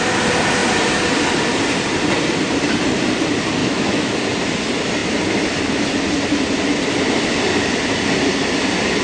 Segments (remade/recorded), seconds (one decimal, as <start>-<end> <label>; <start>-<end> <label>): 0.0-3.6 recorded; 3.6-4.1 remade; 4.1-9.0 recorded